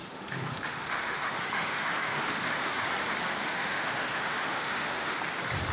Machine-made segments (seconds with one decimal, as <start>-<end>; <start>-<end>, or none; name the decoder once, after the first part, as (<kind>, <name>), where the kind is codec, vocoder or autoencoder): 0.0-2.8 (autoencoder, DAC-VAE); 3.4-5.2